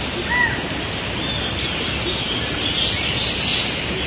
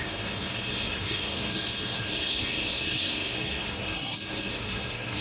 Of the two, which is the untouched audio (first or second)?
first